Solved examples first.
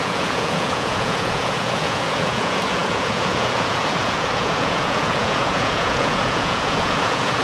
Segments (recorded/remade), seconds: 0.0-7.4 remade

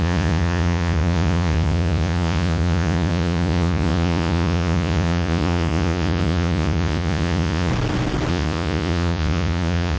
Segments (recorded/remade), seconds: 0.0-7.7 remade; 7.7-8.3 recorded; 8.3-10.0 remade

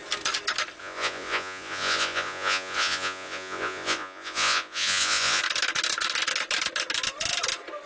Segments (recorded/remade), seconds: 0.0-0.8 recorded; 0.8-5.4 remade; 5.4-7.9 recorded

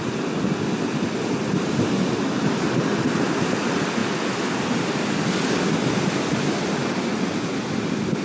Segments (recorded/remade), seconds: 0.0-8.2 recorded

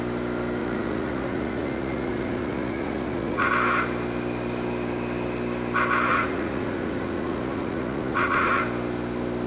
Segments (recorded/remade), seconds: 0.0-0.6 recorded; 0.6-3.5 remade; 3.5-6.1 recorded; 6.1-8.6 remade; 8.6-9.5 recorded

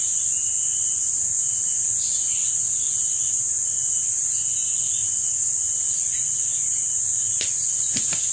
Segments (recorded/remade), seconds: 0.0-8.3 recorded